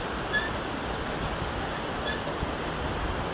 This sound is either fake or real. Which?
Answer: real